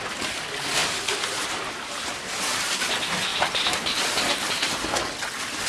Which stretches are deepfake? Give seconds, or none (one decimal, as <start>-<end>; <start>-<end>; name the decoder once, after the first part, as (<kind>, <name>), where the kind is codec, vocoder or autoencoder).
0.8-2.8 (vocoder, BigVGAN v2); 3.3-4.2